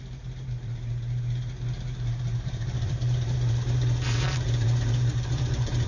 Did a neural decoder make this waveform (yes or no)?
yes